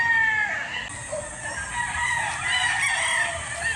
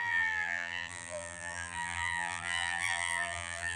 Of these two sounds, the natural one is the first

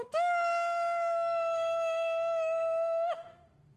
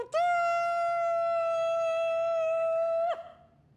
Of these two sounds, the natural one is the second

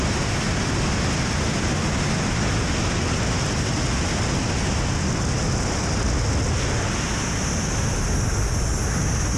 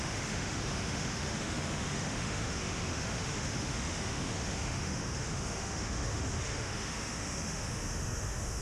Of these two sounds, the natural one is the first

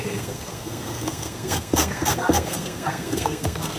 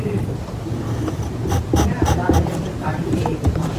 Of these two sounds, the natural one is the second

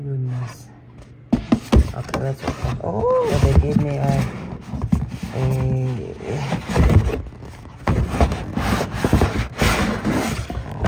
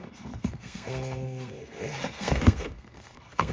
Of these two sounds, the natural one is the first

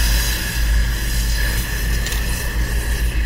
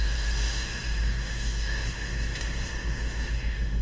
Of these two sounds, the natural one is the first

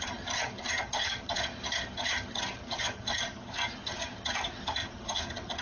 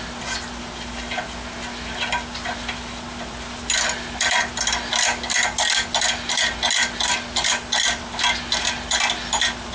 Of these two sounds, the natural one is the second